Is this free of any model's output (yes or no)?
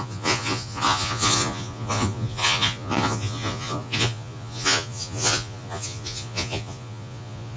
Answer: no